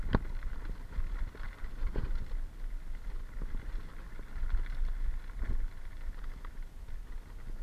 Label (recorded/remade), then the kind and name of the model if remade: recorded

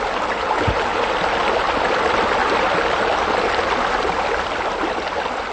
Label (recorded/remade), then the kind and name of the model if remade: recorded